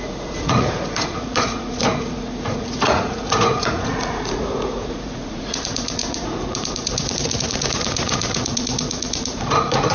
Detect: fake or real fake